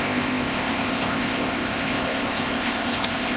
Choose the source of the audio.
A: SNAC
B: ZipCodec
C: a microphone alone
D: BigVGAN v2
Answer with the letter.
B